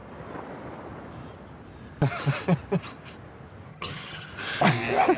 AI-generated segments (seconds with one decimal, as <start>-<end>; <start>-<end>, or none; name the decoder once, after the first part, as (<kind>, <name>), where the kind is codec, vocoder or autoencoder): 3.7-4.3 (vocoder, HiFi-GAN)